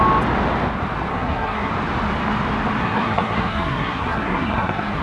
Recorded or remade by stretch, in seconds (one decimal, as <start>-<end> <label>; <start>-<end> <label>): 0.0-1.1 recorded; 1.1-1.7 remade; 1.7-2.8 recorded; 2.8-5.0 remade